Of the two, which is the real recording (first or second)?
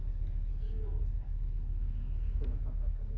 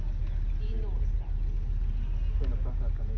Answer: second